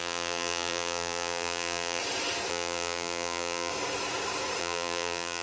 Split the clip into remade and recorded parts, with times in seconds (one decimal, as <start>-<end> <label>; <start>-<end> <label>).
0.0-2.0 remade; 2.0-2.5 recorded; 2.5-3.7 remade; 3.7-4.6 recorded; 4.6-5.4 remade